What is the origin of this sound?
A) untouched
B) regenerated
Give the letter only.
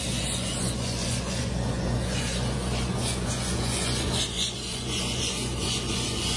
B